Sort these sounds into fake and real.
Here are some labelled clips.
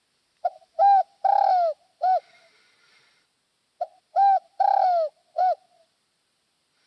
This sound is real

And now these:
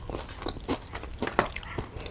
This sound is real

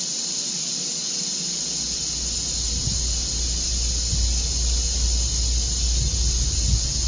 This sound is real